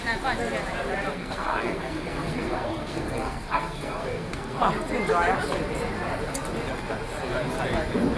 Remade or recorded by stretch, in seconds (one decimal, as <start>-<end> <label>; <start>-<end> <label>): 0.0-1.1 recorded; 1.1-4.7 remade; 4.7-8.2 recorded